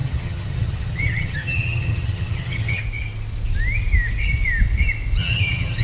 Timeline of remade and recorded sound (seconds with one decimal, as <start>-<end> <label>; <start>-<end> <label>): 0.0-2.8 remade; 2.8-5.2 recorded; 5.2-5.8 remade